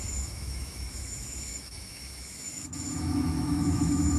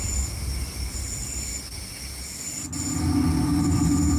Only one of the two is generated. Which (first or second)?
first